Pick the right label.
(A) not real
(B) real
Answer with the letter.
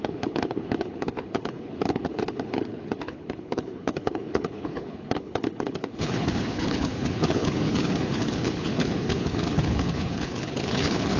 A